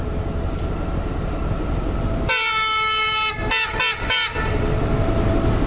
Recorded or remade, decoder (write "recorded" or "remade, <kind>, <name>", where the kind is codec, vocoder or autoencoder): recorded